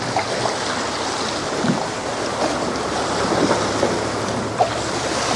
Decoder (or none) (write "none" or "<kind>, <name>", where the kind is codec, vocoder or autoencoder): none